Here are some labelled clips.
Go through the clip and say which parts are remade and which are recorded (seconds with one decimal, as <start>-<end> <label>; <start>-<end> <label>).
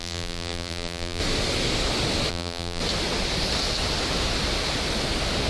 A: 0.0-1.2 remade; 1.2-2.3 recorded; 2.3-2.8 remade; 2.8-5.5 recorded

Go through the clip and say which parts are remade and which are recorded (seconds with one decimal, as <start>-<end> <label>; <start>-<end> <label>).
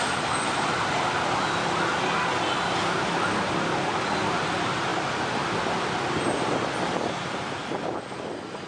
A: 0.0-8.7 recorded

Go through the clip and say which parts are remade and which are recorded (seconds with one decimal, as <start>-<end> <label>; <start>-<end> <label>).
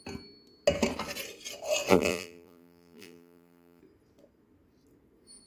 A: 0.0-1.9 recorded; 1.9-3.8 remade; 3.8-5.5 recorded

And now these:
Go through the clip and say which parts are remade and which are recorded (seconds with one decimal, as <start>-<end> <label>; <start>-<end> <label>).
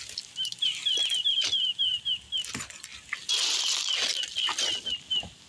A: 0.0-5.5 recorded